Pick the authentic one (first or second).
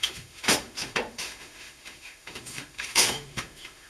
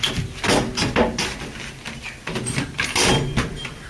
second